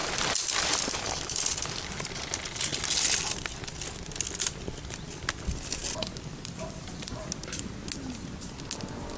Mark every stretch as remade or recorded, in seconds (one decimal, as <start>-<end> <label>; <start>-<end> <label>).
0.0-2.1 remade; 2.1-5.8 recorded; 5.8-6.9 remade; 6.9-9.2 recorded